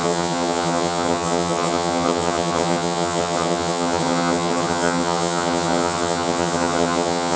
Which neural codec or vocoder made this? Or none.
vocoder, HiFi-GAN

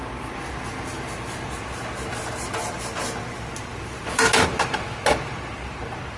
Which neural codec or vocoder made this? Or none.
none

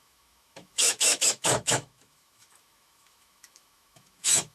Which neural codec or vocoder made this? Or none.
autoencoder, DAC-VAE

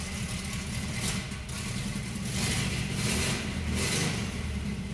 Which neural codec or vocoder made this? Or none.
none